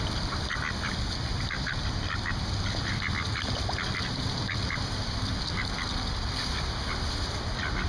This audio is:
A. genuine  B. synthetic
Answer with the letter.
B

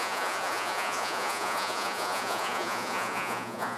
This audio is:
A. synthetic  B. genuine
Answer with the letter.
A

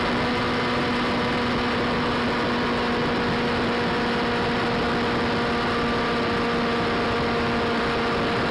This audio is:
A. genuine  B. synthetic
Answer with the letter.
A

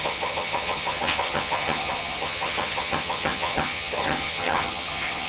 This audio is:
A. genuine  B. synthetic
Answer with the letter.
B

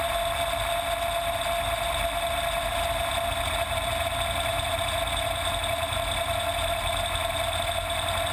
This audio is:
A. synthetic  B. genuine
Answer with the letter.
B